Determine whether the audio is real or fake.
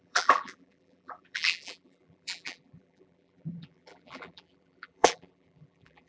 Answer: fake